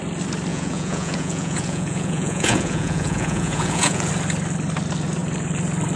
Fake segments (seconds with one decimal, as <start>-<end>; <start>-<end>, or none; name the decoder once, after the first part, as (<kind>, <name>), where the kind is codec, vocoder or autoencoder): 0.5-4.1 (vocoder, Vocos)